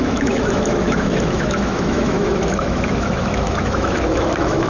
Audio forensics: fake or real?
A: fake